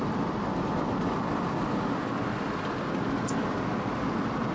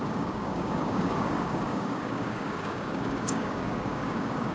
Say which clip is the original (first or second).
first